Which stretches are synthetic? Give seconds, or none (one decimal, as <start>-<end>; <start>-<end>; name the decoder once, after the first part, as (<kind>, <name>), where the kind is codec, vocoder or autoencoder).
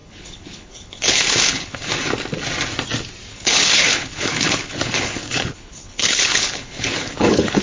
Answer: 0.0-1.9 (codec, HILCodec); 3.3-7.6